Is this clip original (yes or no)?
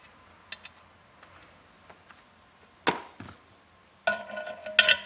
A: yes